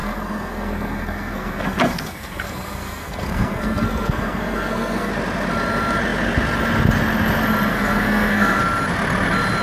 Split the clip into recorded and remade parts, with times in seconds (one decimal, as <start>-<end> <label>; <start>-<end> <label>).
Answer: 0.0-5.1 remade; 5.1-7.7 recorded; 7.7-8.6 remade; 8.6-9.6 recorded